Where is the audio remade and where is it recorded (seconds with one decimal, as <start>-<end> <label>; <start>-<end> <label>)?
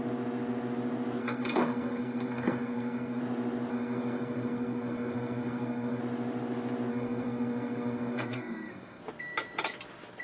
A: 0.0-1.2 recorded; 1.2-3.2 remade; 3.2-3.7 recorded; 3.7-6.0 remade; 6.0-6.9 recorded; 6.9-9.0 remade; 9.0-10.2 recorded